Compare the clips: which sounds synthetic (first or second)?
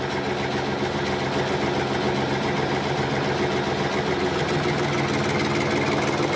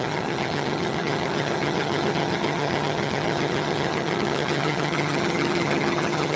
second